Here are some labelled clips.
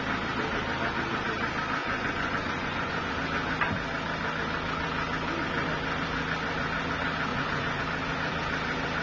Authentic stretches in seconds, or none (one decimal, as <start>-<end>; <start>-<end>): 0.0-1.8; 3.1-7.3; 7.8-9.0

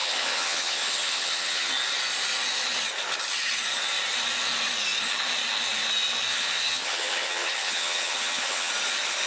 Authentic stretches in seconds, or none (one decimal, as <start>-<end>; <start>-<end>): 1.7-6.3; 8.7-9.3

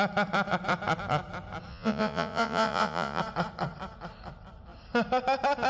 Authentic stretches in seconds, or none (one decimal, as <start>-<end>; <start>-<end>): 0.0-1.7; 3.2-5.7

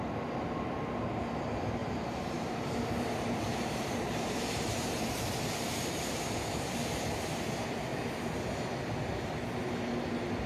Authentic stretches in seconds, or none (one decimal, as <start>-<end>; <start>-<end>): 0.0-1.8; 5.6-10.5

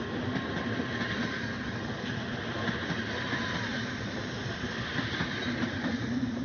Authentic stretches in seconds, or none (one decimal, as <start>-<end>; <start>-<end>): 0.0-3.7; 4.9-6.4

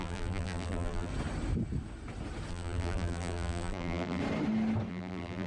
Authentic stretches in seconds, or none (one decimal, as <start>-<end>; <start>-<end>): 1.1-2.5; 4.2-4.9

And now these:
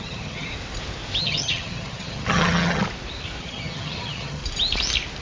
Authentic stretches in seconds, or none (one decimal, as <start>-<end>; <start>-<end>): 0.5-1.2; 2.8-3.4; 4.4-5.2

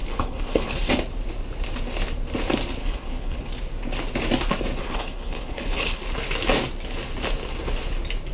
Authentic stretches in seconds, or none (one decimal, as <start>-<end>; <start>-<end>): 0.9-2.8; 3.5-4.8; 6.0-8.3